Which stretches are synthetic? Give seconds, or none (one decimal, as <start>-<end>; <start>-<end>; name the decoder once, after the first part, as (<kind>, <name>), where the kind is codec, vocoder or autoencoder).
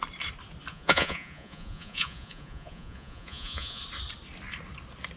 0.7-3.8 (vocoder, Vocos)